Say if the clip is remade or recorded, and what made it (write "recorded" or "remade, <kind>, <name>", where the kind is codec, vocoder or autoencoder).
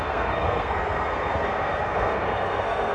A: remade, codec, SNAC